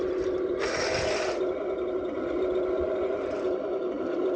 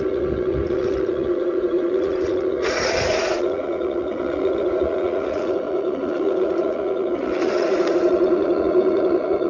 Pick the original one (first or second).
first